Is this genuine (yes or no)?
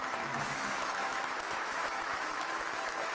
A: no